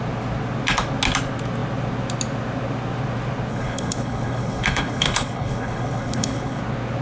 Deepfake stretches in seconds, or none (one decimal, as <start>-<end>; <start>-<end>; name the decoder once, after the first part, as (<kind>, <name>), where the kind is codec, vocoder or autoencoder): 3.5-6.6 (codec, HILCodec)